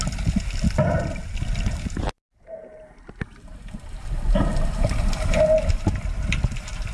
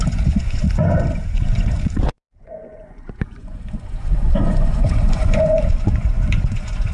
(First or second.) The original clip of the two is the first